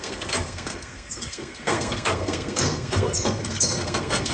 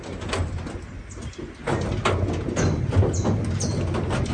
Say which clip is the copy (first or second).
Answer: first